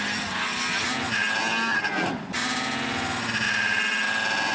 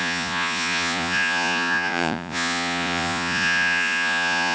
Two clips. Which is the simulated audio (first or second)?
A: second